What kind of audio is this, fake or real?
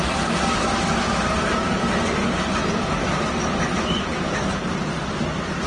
real